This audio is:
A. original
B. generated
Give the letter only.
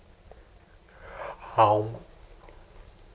A